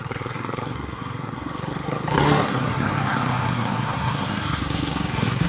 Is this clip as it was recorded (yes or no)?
no